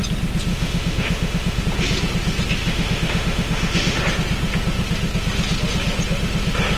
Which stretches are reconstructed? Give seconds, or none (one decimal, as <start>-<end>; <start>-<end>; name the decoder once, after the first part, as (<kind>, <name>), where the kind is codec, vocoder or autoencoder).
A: 0.5-1.6 (autoencoder, DAC-VAE); 2.6-4.0